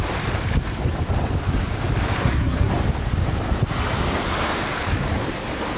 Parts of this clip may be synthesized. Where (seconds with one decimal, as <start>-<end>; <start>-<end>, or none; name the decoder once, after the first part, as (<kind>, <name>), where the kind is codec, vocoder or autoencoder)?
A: 2.2-2.7 (codec, SNAC)